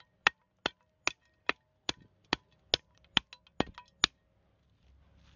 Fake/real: real